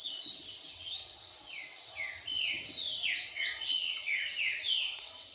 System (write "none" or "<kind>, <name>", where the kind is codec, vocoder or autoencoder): vocoder, WaveNeXt